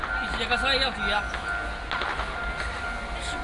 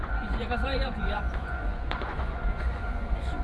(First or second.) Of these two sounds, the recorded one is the first